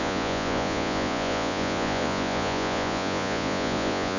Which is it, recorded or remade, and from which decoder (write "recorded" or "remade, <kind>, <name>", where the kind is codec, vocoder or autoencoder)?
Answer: remade, vocoder, Vocos